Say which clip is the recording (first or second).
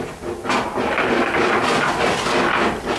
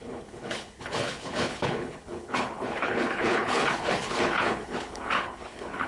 first